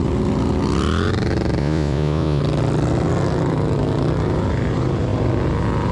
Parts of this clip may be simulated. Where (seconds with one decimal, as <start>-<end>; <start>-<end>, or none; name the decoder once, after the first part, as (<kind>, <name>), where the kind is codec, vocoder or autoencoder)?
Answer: 1.6-2.4 (vocoder, Vocos)